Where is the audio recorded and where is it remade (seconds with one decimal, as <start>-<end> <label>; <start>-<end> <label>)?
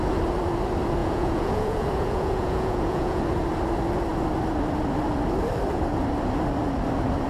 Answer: 0.0-1.0 recorded; 1.0-3.2 remade; 3.2-7.3 recorded